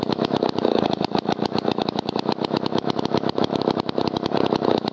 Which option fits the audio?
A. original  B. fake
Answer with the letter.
B